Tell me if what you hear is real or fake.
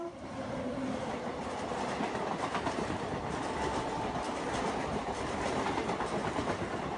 fake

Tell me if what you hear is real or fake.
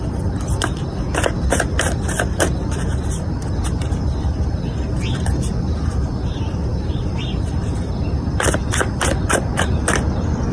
fake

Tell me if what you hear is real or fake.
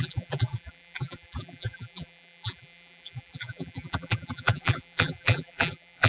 fake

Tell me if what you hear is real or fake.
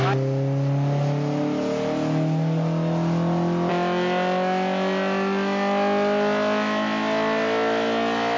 real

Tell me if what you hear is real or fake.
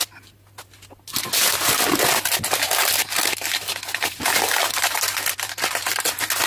real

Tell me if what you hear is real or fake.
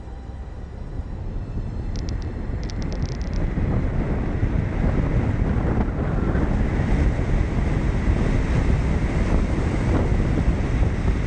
real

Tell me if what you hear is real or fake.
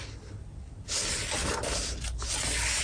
real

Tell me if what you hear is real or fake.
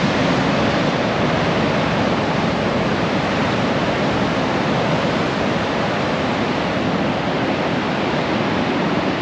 real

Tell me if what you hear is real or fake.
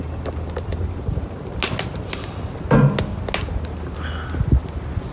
real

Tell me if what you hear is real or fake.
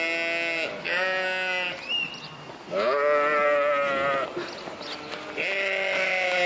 real